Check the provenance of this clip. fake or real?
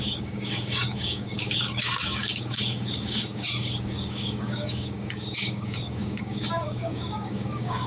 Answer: fake